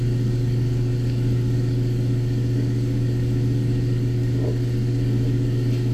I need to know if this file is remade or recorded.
remade